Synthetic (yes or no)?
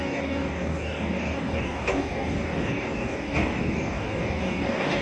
yes